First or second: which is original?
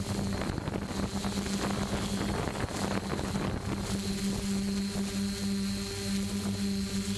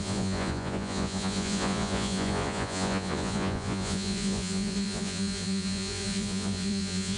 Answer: first